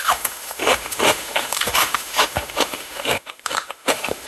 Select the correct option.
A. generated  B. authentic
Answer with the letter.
A